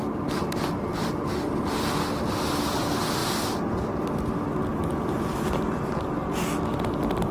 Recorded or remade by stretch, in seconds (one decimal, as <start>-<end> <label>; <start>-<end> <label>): 0.0-7.3 recorded

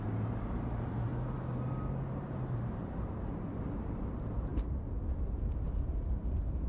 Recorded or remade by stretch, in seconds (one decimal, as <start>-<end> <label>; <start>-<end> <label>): 0.0-1.1 remade; 1.1-2.1 recorded; 2.1-6.7 remade

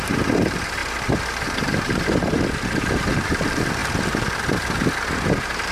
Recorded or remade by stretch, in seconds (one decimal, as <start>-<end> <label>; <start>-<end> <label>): 0.0-0.8 remade; 0.8-1.3 recorded; 1.3-3.8 remade; 3.8-5.3 recorded; 5.3-5.7 remade